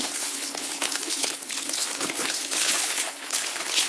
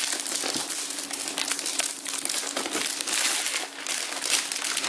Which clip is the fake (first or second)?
first